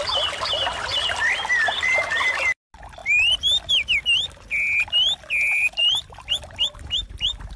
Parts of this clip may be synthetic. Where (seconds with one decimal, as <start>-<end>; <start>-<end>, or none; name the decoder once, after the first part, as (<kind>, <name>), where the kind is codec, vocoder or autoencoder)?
0.7-1.2 (vocoder, BigVGAN v2); 3.0-3.7; 5.8-7.6